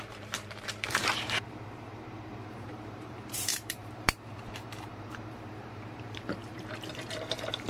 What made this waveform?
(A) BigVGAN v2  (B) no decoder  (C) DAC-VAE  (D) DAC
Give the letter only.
A